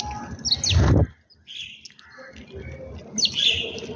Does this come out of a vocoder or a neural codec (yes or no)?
no